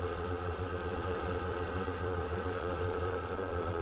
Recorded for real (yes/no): no